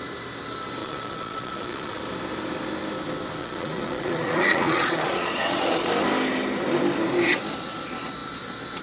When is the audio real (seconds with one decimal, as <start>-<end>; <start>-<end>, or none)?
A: 0.0-0.8; 2.0-3.4; 5.9-8.8